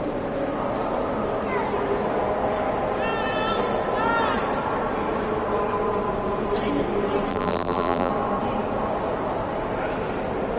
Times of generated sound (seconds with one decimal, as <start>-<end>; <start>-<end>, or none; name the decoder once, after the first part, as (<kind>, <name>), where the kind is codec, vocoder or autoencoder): 7.3-8.1 (vocoder, BigVGAN v2)